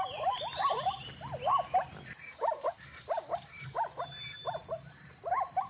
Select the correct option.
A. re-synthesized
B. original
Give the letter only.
A